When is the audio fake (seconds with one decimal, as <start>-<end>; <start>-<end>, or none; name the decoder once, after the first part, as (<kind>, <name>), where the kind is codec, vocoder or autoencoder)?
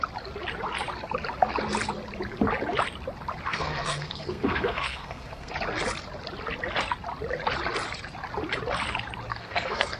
3.5-5.5 (codec, SNAC); 9.3-10.0